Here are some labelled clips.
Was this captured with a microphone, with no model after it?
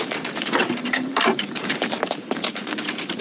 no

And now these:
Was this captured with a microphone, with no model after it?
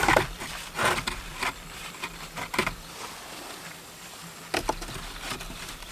no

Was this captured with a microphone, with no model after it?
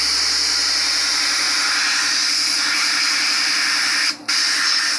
yes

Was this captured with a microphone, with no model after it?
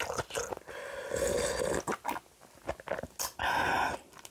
yes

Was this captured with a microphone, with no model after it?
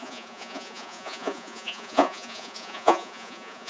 no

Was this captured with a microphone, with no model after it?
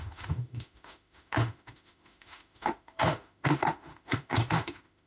no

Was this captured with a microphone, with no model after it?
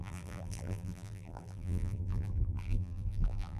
no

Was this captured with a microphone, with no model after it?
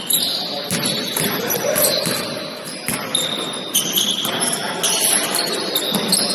yes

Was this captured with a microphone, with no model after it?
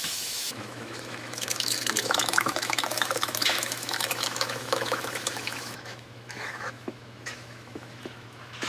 no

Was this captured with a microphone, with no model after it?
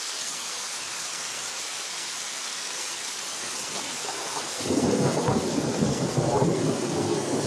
no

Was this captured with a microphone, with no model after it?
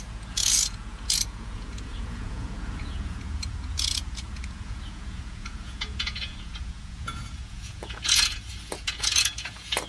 no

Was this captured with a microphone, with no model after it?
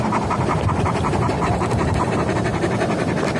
yes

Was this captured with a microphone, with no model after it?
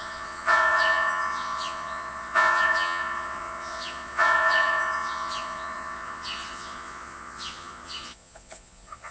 no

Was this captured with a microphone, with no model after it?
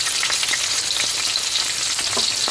yes